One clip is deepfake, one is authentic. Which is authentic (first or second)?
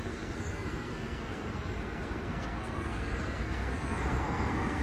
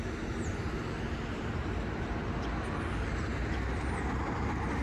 second